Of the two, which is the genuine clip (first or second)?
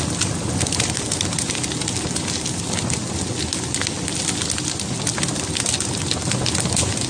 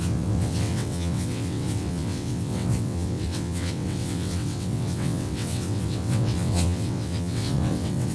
first